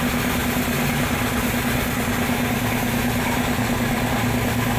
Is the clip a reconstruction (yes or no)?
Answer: no